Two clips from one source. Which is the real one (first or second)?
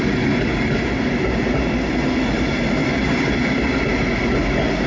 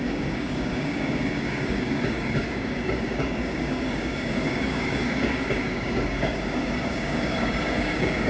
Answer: first